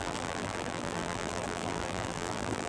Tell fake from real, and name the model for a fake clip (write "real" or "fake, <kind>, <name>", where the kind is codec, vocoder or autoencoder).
fake, vocoder, BigVGAN v2